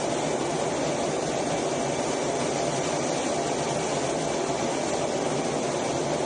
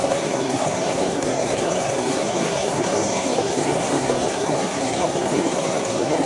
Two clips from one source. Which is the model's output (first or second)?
second